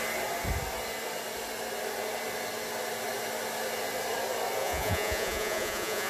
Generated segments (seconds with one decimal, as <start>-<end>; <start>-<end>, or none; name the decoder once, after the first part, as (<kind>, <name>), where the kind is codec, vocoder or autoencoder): 4.6-6.1 (vocoder, Vocos)